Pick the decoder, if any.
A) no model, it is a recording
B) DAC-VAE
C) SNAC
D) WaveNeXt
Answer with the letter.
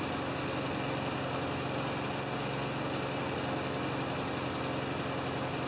A